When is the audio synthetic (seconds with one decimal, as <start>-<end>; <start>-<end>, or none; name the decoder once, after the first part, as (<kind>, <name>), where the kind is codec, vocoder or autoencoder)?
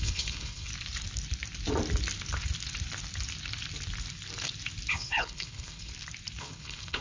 0.0-0.7 (codec, HILCodec); 4.9-5.9; 6.4-7.0